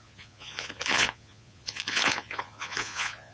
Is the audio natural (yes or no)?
no